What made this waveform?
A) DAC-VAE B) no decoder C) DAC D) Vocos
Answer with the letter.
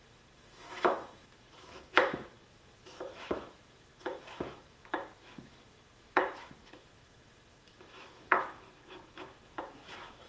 A